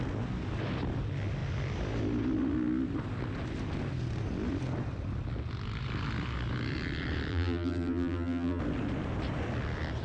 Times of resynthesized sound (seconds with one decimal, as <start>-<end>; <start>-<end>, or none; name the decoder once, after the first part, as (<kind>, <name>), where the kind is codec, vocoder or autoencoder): 7.3-8.6 (vocoder, BigVGAN v2)